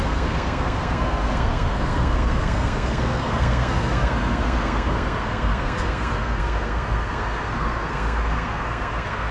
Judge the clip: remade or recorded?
remade